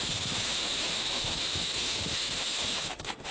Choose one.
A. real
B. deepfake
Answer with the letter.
B